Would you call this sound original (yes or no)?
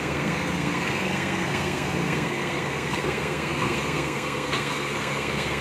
no